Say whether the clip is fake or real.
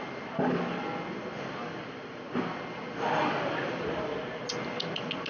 real